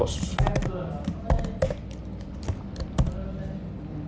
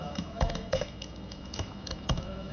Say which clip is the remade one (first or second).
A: second